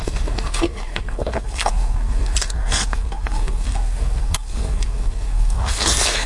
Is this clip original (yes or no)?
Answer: no